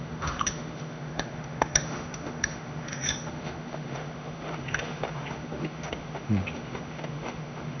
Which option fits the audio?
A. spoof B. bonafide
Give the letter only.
A